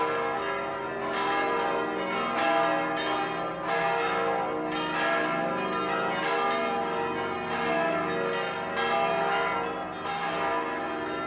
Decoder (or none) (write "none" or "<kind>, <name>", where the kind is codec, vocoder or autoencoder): none